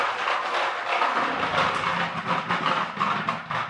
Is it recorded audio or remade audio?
recorded